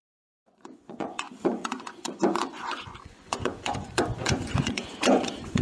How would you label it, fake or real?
fake